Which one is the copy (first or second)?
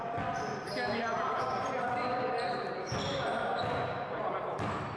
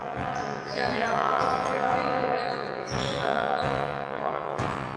second